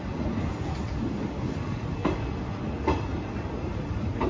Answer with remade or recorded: recorded